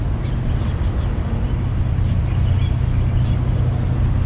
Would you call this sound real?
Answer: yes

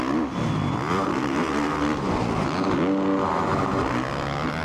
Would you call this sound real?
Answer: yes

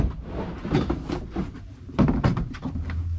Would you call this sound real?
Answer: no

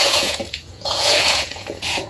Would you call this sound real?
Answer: no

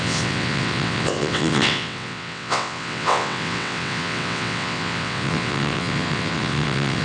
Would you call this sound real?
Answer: no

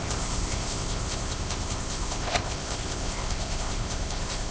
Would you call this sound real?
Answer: no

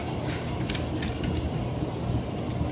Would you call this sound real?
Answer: yes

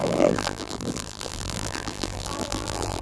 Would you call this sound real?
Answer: no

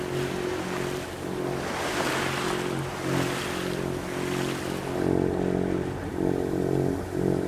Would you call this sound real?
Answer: yes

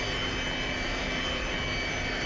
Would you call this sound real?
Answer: yes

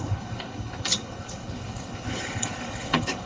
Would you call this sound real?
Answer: no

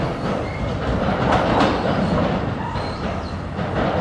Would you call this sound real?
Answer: no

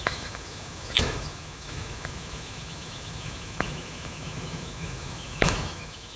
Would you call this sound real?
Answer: no